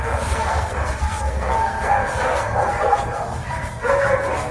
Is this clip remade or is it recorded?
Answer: remade